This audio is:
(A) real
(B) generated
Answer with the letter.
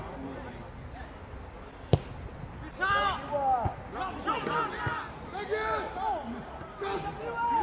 A